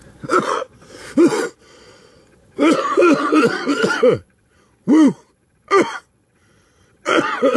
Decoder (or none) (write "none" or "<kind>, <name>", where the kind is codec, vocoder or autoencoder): vocoder, Vocos